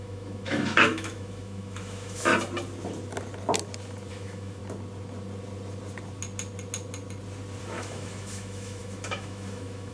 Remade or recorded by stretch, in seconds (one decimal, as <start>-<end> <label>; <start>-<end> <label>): 0.0-2.3 remade; 2.3-4.1 recorded; 4.1-4.6 remade; 4.6-7.6 recorded; 7.6-9.9 remade